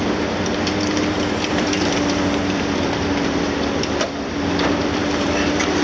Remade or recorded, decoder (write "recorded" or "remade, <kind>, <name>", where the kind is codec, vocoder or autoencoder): remade, vocoder, BigVGAN v2